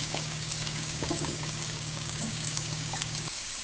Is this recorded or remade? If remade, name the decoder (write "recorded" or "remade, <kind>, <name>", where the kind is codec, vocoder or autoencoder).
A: remade, codec, DAC